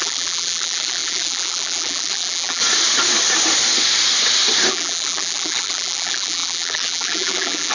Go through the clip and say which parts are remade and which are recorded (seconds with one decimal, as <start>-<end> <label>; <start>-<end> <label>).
0.0-2.6 remade; 2.6-4.7 recorded; 4.7-7.7 remade